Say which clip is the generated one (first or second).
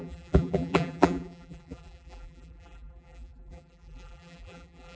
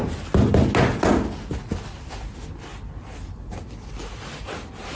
first